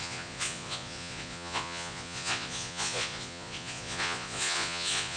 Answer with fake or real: fake